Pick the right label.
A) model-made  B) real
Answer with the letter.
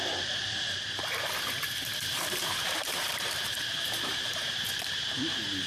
A